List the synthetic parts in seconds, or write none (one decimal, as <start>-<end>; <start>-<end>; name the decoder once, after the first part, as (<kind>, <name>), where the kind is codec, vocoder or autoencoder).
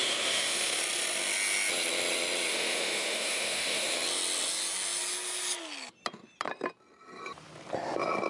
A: 0.0-0.8 (autoencoder, DAC-VAE); 2.5-3.9